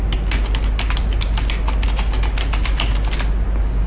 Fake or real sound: real